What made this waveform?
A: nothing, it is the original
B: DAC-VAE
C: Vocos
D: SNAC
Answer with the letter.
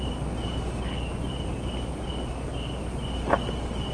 A